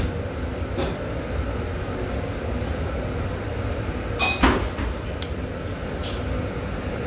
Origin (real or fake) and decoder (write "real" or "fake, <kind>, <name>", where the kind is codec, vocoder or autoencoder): real